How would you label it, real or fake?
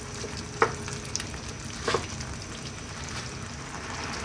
real